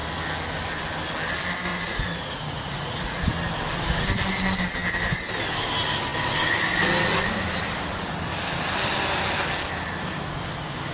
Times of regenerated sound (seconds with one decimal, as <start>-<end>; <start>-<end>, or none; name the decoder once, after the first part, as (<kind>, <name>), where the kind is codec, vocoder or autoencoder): 1.7-3.2 (vocoder, Vocos)